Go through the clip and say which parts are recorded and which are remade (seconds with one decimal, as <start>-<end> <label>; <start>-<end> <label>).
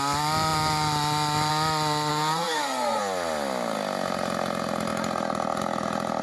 0.0-2.1 recorded; 2.1-3.0 remade; 3.0-6.2 recorded